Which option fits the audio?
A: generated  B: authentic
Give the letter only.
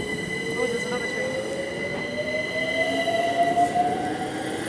B